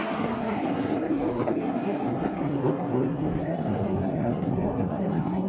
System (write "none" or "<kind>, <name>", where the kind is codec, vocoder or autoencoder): codec, SNAC